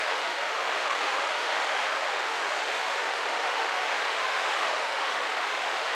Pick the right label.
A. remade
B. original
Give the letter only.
A